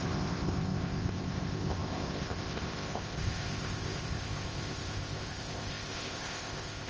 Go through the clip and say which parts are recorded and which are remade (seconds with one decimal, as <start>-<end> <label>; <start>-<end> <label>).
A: 0.0-6.9 remade